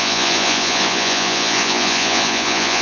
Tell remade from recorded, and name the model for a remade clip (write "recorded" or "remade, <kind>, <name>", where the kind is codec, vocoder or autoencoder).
remade, vocoder, Vocos